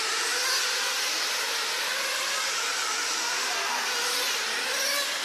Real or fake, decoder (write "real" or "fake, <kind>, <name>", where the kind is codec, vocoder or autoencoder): real